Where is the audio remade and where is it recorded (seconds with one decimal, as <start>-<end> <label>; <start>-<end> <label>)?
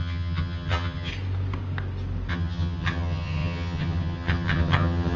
0.0-1.1 remade; 1.1-2.3 recorded; 2.3-5.2 remade